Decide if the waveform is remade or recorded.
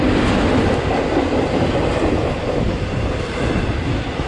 recorded